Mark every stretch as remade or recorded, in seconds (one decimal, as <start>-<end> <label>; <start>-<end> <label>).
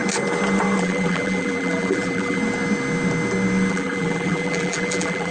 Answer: 0.0-0.8 recorded; 0.8-2.4 remade; 2.4-3.7 recorded; 3.7-5.3 remade